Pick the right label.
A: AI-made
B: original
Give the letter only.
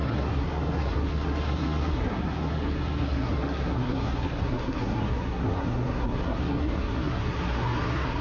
A